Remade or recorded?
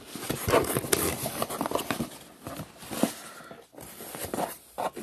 recorded